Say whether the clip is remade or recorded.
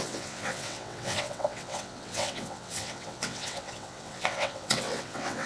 remade